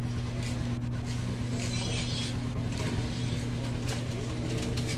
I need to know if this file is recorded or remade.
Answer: recorded